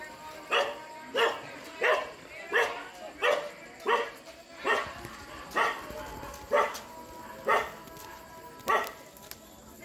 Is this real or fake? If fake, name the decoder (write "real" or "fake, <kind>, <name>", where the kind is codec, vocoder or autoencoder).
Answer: real